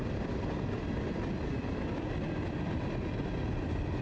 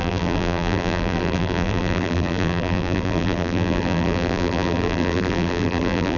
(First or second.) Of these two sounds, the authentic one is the first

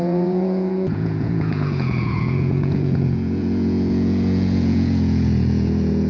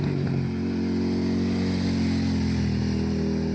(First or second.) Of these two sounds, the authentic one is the second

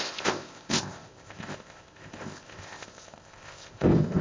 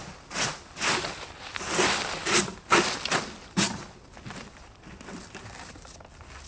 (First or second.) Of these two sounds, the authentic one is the second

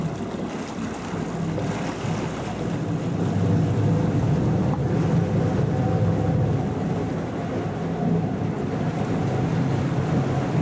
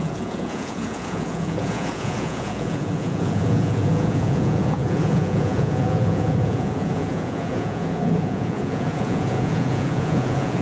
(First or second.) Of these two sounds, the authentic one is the first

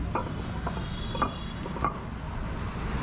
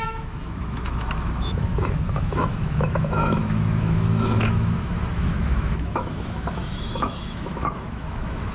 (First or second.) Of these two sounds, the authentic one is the first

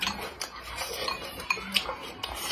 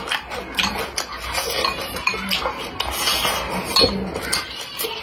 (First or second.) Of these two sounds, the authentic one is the second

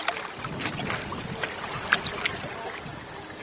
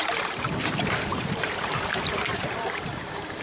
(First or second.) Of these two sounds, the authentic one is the first